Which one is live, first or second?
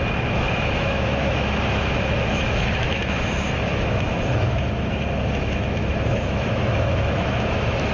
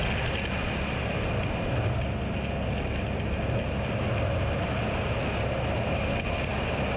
second